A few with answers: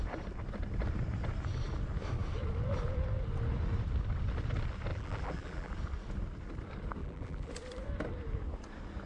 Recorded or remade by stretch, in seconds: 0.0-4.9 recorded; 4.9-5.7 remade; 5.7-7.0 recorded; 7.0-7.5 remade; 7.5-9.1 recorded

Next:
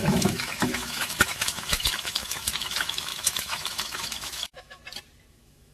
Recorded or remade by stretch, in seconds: 0.0-4.8 remade; 4.8-5.3 recorded; 5.3-5.7 remade